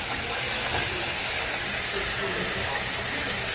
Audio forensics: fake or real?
real